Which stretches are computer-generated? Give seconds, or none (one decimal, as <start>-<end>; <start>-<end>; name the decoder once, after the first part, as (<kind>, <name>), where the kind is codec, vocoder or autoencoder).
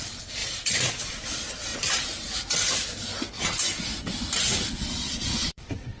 0.0-1.7 (vocoder, Vocos); 4.7-6.0